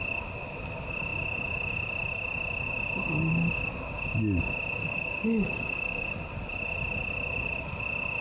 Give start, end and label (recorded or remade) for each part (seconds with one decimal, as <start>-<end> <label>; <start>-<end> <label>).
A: 0.0-4.8 recorded; 4.8-6.1 remade; 6.1-8.2 recorded

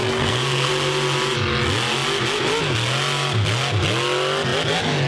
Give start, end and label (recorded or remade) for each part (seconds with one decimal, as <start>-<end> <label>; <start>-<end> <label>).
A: 0.0-0.7 remade; 0.7-5.1 recorded

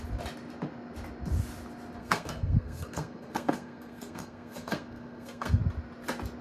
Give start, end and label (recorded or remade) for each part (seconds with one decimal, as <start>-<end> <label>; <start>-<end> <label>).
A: 0.0-2.0 recorded; 2.0-5.6 remade; 5.6-6.4 recorded